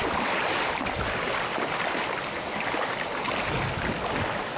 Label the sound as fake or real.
real